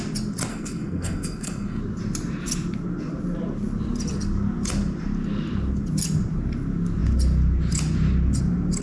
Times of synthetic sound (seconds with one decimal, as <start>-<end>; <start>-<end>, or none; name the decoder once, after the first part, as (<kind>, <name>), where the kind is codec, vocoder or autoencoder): 0.5-1.8 (codec, SNAC)